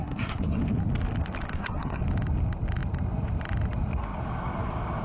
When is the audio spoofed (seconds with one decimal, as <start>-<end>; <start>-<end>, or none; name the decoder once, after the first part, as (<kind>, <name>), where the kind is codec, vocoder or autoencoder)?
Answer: 0.0-0.6 (codec, SNAC); 1.5-2.0